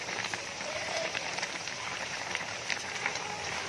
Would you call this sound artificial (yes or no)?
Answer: yes